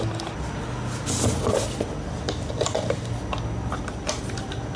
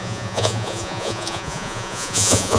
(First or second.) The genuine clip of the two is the first